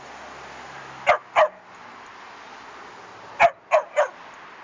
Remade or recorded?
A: recorded